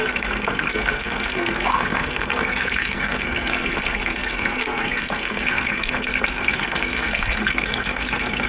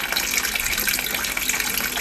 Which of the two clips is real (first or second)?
second